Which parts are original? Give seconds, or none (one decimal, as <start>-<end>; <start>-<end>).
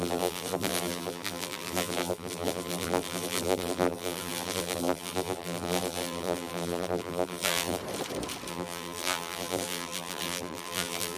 7.8-8.5